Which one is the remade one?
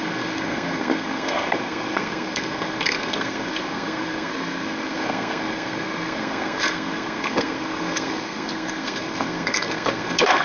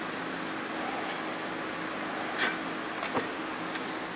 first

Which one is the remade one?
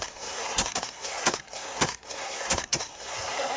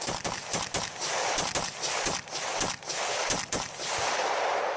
first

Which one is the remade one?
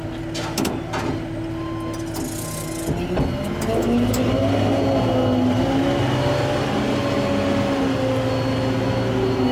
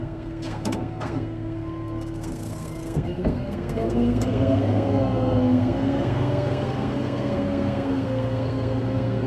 second